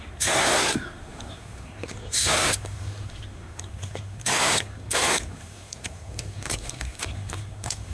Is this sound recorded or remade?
remade